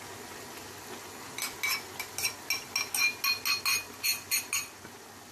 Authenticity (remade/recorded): recorded